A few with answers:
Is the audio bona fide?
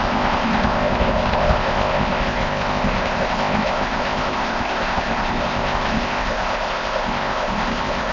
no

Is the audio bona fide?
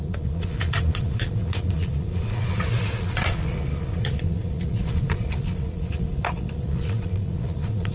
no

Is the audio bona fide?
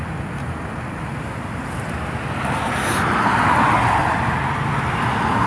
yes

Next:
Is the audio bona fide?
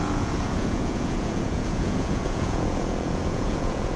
no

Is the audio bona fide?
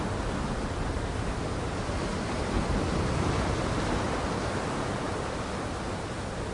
yes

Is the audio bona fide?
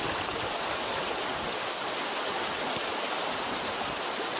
yes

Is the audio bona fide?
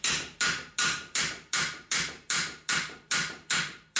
no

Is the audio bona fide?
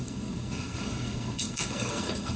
no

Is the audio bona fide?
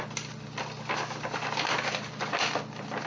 yes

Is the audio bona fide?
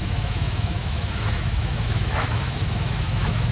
no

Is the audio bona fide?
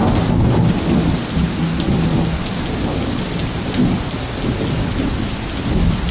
yes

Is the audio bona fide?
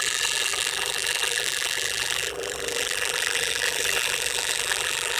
no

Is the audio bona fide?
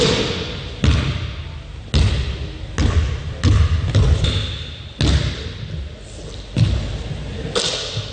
yes